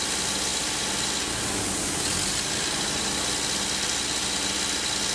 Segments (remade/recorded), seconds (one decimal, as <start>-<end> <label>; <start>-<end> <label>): 0.0-5.1 recorded